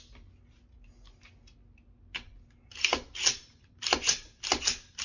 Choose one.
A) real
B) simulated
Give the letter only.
A